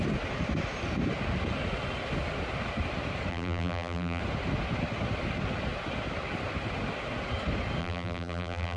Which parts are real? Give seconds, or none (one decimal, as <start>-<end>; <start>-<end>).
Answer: 0.0-3.3; 4.2-7.8